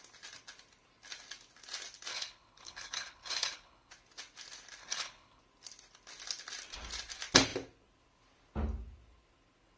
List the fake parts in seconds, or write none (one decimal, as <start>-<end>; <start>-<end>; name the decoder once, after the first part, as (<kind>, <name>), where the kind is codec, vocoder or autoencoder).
2.1-3.9 (codec, HILCodec); 4.8-5.4